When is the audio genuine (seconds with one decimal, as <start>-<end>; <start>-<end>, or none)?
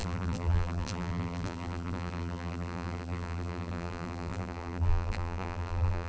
none